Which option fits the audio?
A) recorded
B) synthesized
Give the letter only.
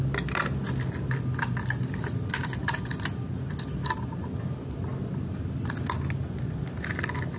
A